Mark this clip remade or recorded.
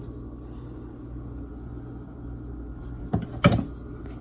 recorded